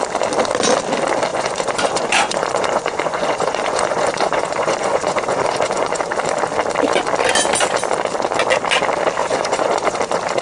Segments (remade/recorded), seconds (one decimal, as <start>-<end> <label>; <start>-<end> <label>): 0.0-1.3 recorded; 1.3-6.0 remade; 6.0-9.2 recorded; 9.2-10.0 remade; 10.0-10.4 recorded